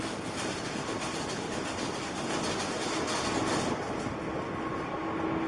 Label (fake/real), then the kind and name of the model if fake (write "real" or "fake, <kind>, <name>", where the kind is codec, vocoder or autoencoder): real